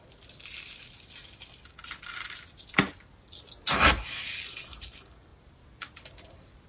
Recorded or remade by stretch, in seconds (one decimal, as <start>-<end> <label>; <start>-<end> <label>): 0.0-6.7 recorded